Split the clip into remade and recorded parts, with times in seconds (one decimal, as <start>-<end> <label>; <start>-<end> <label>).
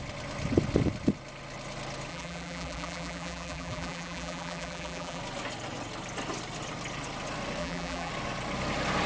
0.0-2.1 recorded; 2.1-5.2 remade; 5.2-7.6 recorded; 7.6-8.1 remade; 8.1-9.1 recorded